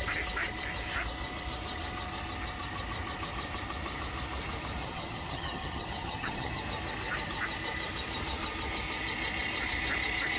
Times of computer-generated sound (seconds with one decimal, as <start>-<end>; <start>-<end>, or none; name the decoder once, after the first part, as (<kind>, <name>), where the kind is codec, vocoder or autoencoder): 4.8-6.6 (vocoder, HiFi-GAN)

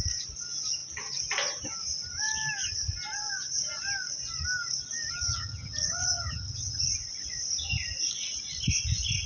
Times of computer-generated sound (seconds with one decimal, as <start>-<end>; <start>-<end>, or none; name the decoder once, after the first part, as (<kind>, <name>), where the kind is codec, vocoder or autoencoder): 5.3-6.9 (vocoder, HiFi-GAN)

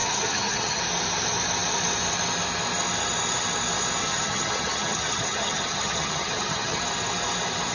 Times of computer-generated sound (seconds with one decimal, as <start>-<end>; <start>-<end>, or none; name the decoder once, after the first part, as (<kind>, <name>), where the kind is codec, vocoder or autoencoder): 0.0-0.8 (vocoder, HiFi-GAN); 4.0-6.8

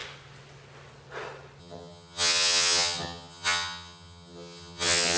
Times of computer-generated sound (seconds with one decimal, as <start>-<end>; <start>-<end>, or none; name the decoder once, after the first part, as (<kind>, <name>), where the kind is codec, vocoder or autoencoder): 1.6-5.2 (vocoder, HiFi-GAN)

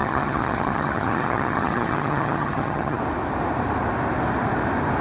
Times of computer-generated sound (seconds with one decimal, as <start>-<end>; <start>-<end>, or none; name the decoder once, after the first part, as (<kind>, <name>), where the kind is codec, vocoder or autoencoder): 0.0-3.0 (vocoder, HiFi-GAN)